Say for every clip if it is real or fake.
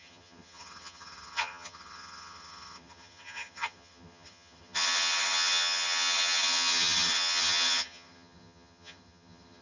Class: fake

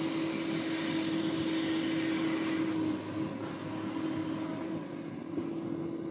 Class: real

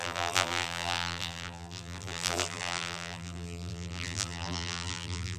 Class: fake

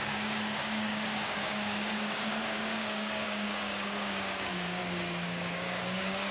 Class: fake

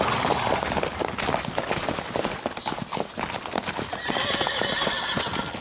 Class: real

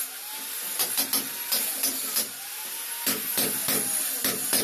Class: real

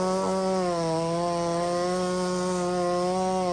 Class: real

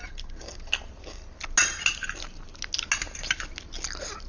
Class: real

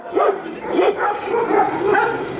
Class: real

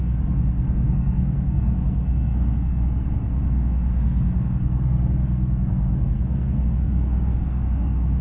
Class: fake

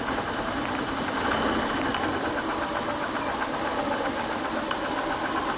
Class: real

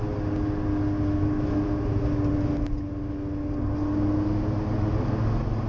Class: real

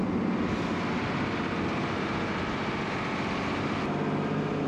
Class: real